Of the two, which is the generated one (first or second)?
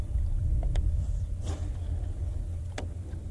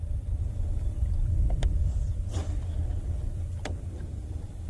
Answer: second